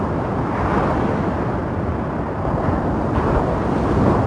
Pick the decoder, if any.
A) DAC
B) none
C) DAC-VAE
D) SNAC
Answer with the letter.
B